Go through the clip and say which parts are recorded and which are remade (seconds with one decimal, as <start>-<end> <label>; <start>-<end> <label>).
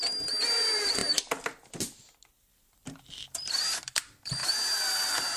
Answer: 0.0-5.4 recorded